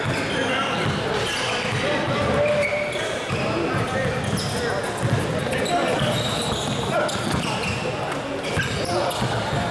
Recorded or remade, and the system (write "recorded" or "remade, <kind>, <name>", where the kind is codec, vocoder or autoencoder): recorded